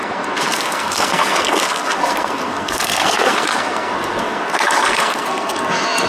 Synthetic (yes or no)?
yes